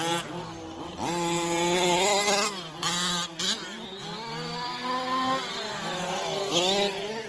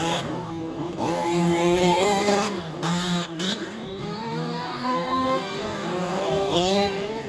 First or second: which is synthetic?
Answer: second